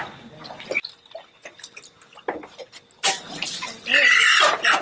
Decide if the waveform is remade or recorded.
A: recorded